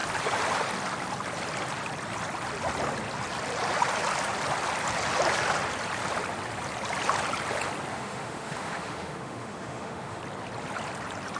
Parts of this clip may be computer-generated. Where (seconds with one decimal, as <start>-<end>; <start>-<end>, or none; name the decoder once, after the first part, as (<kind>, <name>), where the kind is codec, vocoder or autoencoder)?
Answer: 7.9-10.2 (autoencoder, DAC-VAE)